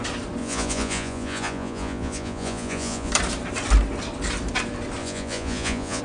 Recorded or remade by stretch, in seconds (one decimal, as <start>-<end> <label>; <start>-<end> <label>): 0.0-0.4 recorded; 0.4-3.1 remade; 3.1-5.0 recorded; 5.0-6.0 remade